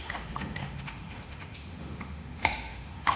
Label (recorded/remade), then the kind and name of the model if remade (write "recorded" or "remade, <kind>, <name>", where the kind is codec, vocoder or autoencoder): remade, autoencoder, DAC-VAE